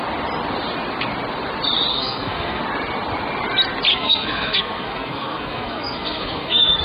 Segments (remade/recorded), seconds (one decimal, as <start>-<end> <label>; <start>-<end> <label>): 0.0-1.9 recorded; 1.9-2.6 remade; 2.6-3.9 recorded; 3.9-6.8 remade